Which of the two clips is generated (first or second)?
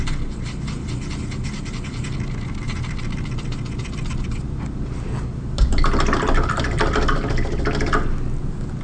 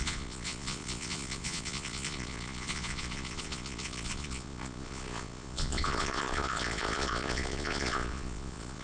second